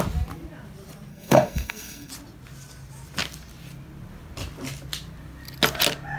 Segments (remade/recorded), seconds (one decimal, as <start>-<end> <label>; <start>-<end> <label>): 0.0-1.1 recorded; 1.1-2.1 remade; 2.1-6.2 recorded